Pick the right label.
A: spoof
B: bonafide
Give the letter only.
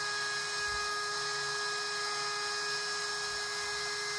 B